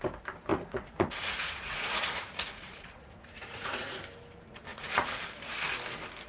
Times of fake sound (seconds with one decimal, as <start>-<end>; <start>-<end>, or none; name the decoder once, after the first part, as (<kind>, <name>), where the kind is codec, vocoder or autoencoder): 0.5-4.0 (vocoder, Vocos); 4.7-5.2

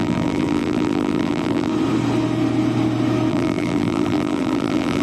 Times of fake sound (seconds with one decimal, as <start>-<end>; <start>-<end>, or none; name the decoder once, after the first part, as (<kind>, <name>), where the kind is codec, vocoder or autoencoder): 0.0-1.7 (vocoder, BigVGAN v2); 3.3-5.0

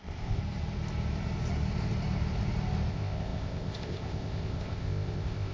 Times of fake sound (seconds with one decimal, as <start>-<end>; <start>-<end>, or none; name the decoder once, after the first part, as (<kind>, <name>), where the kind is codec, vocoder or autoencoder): 0.0-0.4 (codec, ZipCodec); 2.9-5.5

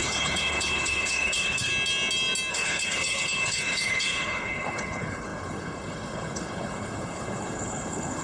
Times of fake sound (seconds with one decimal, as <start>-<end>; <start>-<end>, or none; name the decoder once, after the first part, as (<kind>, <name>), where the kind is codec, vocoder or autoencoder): 0.0-1.7 (codec, HILCodec); 2.5-8.2